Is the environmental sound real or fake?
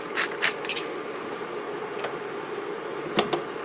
real